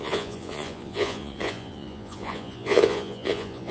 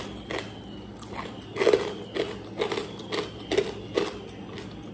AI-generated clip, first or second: first